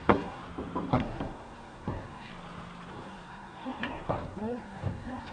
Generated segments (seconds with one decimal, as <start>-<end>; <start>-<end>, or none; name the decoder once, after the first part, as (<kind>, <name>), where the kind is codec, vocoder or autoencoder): 0.0-0.4 (codec, SNAC); 0.9-2.3; 2.9-5.3